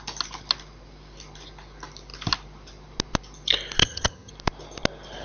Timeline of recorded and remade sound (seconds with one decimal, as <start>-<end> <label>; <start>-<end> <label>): 0.0-3.8 recorded; 3.8-4.3 remade; 4.3-5.2 recorded